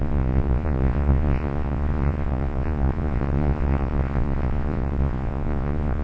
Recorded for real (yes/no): no